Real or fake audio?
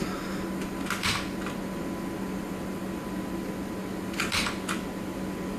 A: real